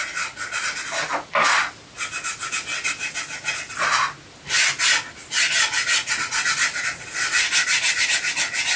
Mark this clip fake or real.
real